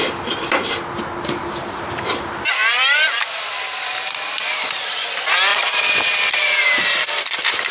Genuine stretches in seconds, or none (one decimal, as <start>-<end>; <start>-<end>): 0.7-2.6; 4.5-7.7